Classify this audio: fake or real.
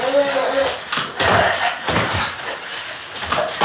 real